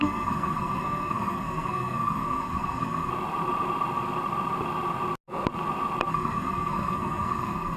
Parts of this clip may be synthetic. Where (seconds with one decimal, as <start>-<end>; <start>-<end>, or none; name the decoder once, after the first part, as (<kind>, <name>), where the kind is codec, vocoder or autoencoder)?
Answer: 0.0-3.1 (codec, SNAC); 6.1-7.8